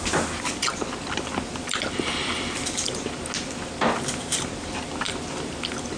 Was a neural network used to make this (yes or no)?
no